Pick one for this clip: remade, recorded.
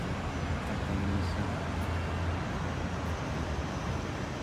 recorded